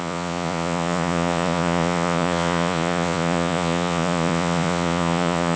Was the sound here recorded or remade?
remade